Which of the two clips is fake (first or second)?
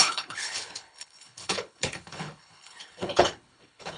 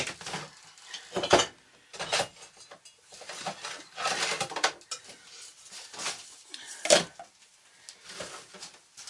first